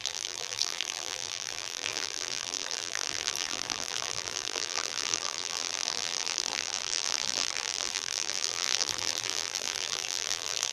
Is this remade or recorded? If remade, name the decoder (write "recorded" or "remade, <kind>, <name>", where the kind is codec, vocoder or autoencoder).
remade, vocoder, BigVGAN v2